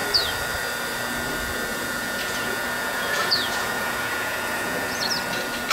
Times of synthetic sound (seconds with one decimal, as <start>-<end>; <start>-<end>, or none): 1.7-5.1